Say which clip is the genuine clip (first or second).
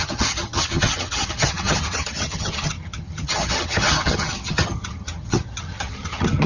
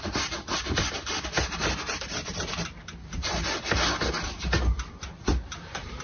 second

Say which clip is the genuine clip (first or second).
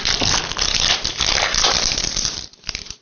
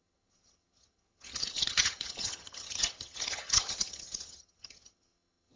first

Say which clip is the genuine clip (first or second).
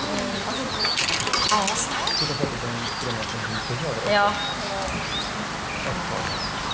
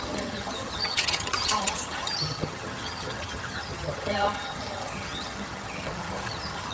first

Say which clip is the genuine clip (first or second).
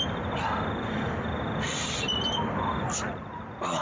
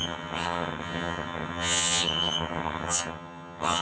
first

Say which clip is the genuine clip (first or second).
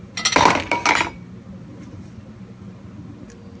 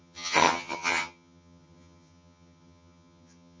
first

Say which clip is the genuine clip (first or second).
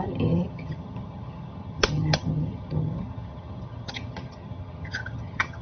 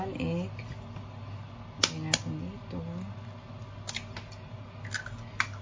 second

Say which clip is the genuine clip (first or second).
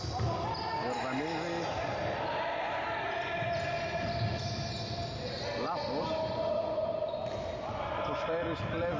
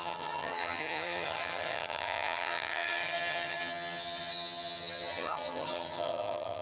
first